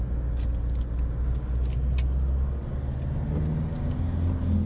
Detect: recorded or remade recorded